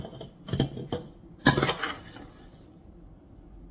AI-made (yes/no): no